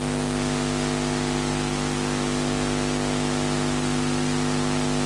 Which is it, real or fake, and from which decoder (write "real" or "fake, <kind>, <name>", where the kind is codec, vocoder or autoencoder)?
real